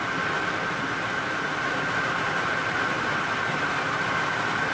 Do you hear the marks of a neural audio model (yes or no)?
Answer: no